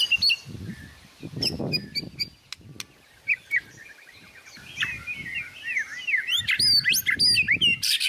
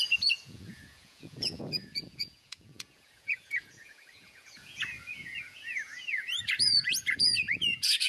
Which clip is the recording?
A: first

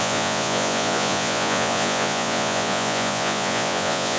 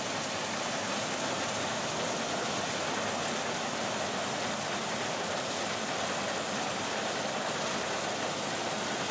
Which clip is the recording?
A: second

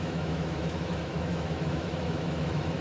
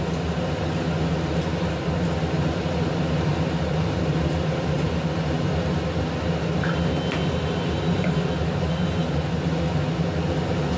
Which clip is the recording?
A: second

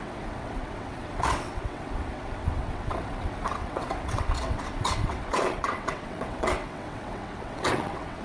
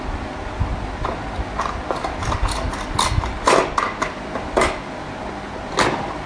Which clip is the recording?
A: second